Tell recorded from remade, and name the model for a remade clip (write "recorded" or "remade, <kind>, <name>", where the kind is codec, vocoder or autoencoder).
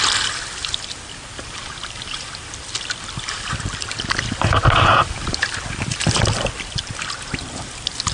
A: recorded